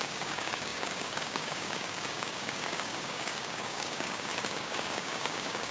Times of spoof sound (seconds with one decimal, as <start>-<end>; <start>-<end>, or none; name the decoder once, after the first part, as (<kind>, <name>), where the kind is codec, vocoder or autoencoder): 0.0-5.7 (codec, DAC)

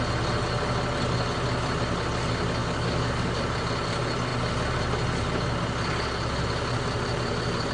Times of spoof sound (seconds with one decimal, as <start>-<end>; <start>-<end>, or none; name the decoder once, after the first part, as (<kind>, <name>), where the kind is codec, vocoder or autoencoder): 2.6-3.4 (codec, DAC)

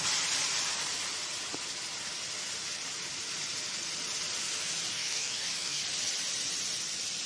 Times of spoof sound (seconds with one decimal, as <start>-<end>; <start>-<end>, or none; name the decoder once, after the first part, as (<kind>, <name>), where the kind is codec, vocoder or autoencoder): 4.9-5.8 (codec, DAC)